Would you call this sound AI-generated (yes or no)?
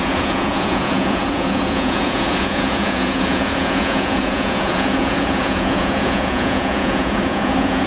yes